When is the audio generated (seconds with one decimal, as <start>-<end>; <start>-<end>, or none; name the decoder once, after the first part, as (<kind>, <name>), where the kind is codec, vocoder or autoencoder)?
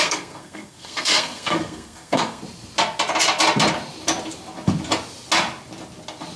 0.0-2.4 (codec, SNAC)